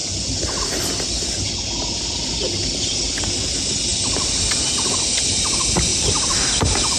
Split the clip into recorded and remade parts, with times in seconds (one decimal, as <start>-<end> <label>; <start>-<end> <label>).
0.0-3.9 recorded; 3.9-4.4 remade; 4.4-5.9 recorded; 5.9-7.0 remade